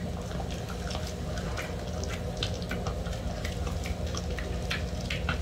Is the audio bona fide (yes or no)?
yes